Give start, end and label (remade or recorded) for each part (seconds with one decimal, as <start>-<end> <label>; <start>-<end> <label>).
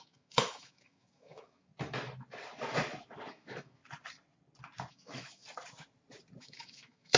0.0-1.7 remade; 1.7-3.3 recorded; 3.3-3.8 remade; 3.8-4.9 recorded; 4.9-5.4 remade; 5.4-6.4 recorded; 6.4-7.2 remade